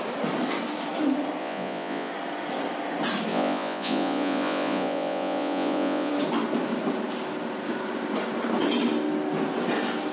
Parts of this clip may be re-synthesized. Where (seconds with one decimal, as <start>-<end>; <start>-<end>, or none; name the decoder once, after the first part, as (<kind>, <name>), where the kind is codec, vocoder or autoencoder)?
1.4-2.1 (vocoder, Vocos); 3.3-6.1